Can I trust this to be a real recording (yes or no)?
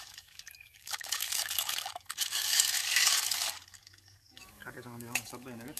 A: no